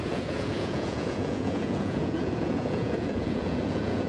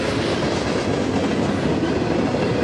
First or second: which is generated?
first